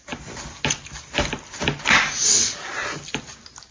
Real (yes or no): yes